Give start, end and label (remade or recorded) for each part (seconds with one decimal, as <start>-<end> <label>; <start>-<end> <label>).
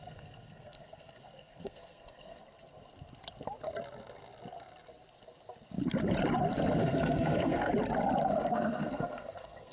0.0-2.4 remade; 2.4-6.8 recorded; 6.8-7.7 remade; 7.7-8.5 recorded; 8.5-9.7 remade